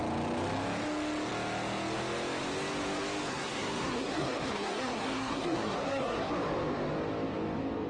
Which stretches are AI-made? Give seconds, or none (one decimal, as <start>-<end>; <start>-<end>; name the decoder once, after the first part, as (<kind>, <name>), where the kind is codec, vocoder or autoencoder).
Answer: 3.3-6.3 (codec, SNAC)

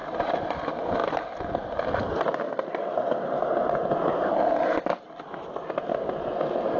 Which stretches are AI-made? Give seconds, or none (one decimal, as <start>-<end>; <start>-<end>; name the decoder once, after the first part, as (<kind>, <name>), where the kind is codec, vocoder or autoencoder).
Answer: 0.0-0.5 (vocoder, BigVGAN v2)

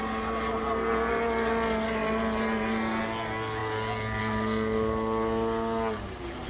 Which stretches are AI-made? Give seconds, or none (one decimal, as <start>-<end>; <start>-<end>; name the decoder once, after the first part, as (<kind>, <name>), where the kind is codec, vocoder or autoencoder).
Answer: none

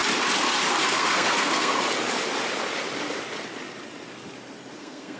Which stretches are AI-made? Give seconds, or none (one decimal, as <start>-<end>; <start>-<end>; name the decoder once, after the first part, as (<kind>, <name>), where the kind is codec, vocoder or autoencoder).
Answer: 0.7-1.7 (codec, SNAC); 4.8-5.2

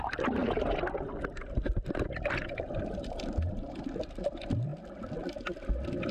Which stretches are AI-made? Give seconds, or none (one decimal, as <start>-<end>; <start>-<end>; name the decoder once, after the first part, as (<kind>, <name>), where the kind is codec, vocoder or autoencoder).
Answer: 0.0-6.1 (vocoder, BigVGAN v2)